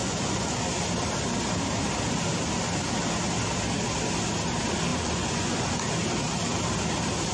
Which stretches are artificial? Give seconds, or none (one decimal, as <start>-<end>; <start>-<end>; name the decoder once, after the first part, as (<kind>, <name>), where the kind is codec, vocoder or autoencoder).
0.0-0.6 (vocoder, Vocos); 4.9-5.7